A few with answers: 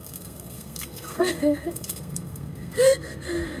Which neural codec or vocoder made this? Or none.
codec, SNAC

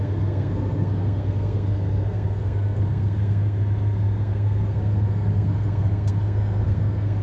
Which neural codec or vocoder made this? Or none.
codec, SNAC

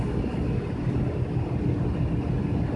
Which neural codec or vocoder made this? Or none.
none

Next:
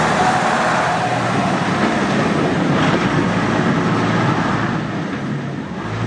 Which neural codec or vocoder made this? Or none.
none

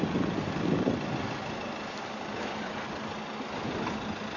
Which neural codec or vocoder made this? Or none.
none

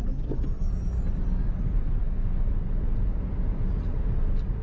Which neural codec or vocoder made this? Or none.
none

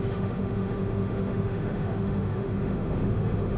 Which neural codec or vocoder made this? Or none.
autoencoder, DAC-VAE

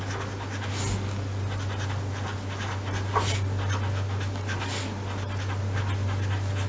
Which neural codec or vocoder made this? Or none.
none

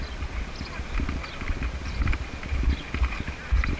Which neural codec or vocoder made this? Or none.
none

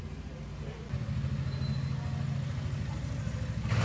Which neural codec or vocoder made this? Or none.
none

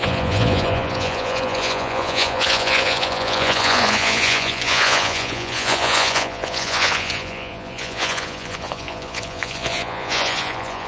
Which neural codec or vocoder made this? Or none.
vocoder, Vocos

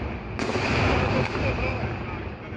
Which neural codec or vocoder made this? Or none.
none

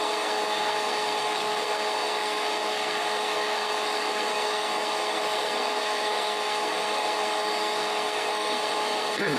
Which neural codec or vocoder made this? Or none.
codec, SNAC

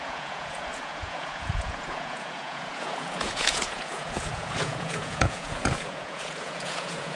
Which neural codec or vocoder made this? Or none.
vocoder, Vocos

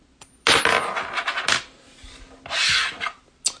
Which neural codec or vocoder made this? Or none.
none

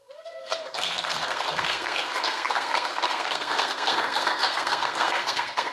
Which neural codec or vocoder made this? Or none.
codec, SNAC